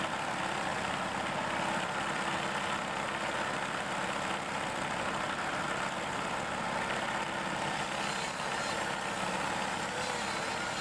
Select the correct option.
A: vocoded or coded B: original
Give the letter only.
B